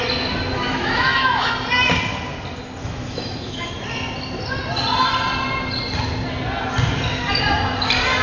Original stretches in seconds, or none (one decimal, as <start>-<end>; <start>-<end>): 0.0-0.5; 1.5-2.8; 3.7-8.2